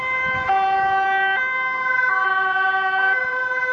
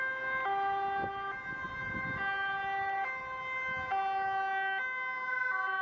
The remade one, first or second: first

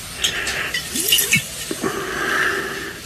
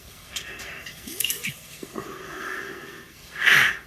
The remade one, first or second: second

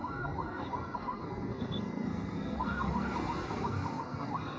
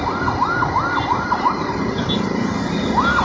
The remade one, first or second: first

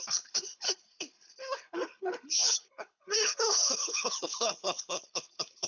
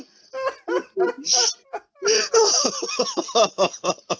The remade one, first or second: first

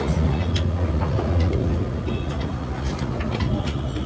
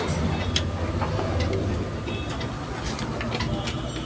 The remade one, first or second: first